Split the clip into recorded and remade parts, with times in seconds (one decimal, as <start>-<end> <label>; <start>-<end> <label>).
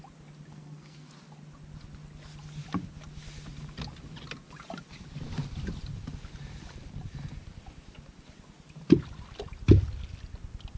0.0-0.5 recorded; 0.5-1.1 remade; 1.1-10.8 recorded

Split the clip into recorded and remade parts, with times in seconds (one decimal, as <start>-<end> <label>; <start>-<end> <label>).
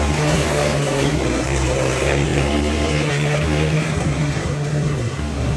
0.0-5.6 remade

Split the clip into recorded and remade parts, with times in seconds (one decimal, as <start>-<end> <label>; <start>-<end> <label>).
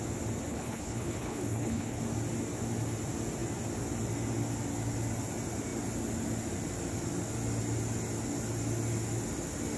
0.0-0.5 recorded; 0.5-2.0 remade; 2.0-9.8 recorded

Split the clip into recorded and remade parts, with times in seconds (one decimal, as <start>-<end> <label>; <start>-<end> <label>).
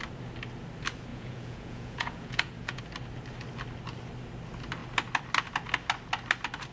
0.0-1.1 recorded; 1.1-2.8 remade; 2.8-6.7 recorded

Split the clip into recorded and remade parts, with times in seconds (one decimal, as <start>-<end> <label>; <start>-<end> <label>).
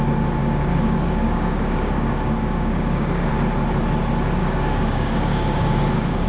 0.0-0.4 recorded; 0.4-3.3 remade; 3.3-4.4 recorded; 4.4-6.3 remade